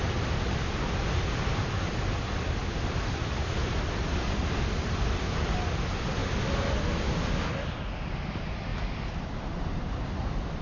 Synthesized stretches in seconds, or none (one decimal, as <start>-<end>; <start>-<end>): none